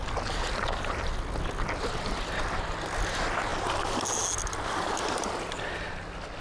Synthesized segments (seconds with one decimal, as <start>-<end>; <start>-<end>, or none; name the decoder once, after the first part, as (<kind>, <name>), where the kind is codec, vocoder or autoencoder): none